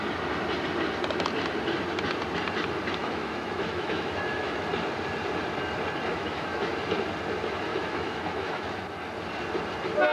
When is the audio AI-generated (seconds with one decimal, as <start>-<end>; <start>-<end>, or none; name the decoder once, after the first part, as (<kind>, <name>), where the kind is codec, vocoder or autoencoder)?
3.0-4.7 (autoencoder, DAC-VAE); 6.1-6.7; 7.7-8.8